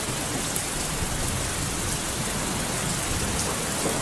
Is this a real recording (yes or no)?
yes